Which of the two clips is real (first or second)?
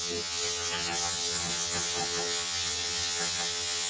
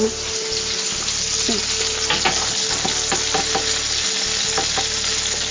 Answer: second